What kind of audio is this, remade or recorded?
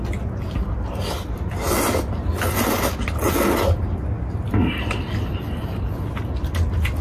recorded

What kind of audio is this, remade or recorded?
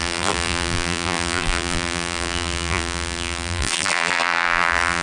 remade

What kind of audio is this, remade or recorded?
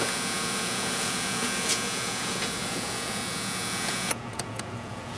remade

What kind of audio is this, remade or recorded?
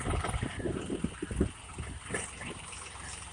recorded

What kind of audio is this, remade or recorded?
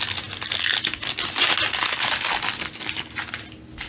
recorded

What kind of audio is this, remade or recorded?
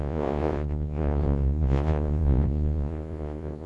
remade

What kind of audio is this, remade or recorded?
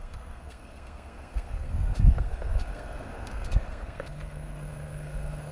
remade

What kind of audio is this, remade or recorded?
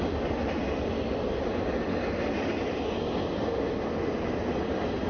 recorded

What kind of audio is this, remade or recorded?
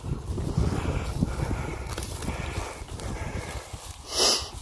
recorded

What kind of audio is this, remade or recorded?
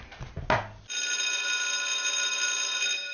recorded